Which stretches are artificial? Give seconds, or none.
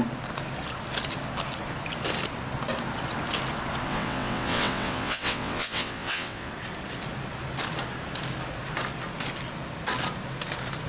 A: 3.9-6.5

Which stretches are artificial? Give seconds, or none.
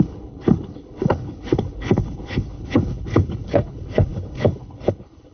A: 0.0-5.3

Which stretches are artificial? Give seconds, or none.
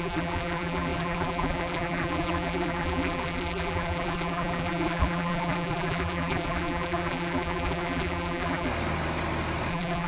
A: 0.0-8.7; 9.7-10.1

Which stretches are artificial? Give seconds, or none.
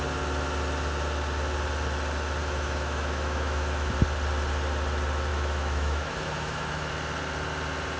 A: 2.4-3.9; 5.3-6.9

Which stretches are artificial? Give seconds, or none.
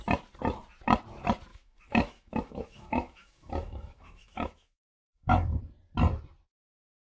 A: 1.5-5.6